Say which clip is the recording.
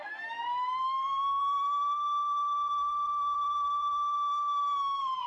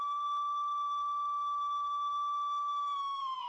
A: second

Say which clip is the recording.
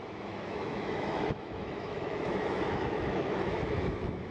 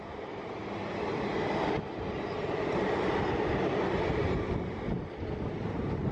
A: second